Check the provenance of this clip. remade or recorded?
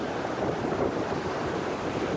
recorded